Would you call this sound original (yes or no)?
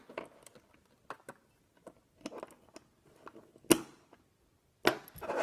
yes